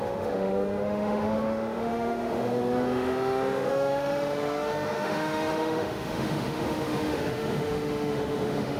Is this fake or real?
fake